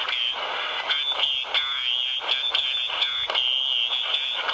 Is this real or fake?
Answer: real